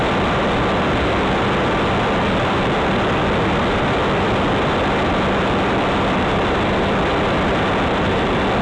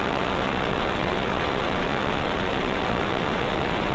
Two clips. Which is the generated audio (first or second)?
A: second